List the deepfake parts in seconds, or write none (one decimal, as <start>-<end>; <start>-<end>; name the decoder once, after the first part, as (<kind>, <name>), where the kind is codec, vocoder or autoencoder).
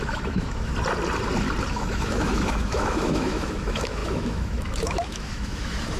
0.0-0.7 (autoencoder, DAC-VAE); 1.7-6.0